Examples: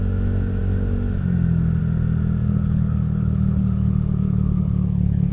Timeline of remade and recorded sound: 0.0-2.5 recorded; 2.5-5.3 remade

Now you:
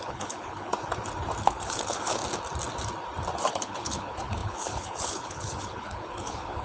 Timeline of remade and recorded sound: 0.0-0.7 remade; 0.7-1.4 recorded; 1.4-2.2 remade; 2.2-3.5 recorded; 3.5-6.6 remade

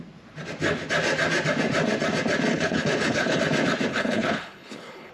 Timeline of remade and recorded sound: 0.0-2.5 recorded; 2.5-3.4 remade; 3.4-3.9 recorded; 3.9-5.1 remade

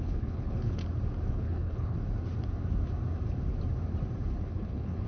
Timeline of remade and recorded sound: 0.0-0.8 remade; 0.8-1.3 recorded; 1.3-2.0 remade; 2.0-4.4 recorded; 4.4-5.1 remade

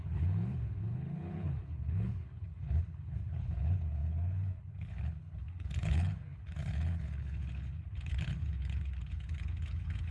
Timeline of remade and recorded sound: 0.0-10.1 remade